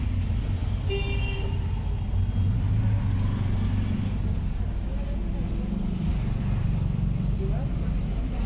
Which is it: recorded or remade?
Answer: recorded